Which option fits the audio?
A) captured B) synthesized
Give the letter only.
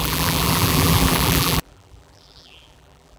B